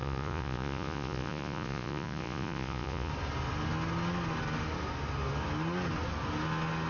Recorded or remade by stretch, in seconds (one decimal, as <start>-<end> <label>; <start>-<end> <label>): 0.0-3.1 remade; 3.1-6.9 recorded